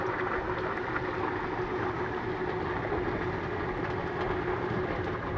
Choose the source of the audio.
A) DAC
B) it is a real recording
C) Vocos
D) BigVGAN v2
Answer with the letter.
B